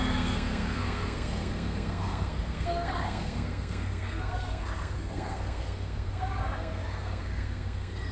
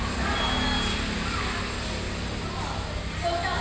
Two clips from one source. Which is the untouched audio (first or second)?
second